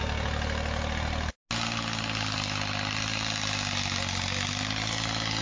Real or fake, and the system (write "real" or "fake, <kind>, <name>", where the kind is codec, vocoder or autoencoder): real